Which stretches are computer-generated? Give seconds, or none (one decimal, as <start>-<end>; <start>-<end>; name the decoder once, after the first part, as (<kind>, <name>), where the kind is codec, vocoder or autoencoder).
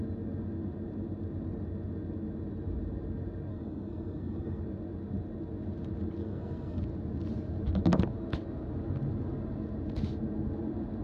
3.5-4.6 (codec, SNAC); 6.2-6.8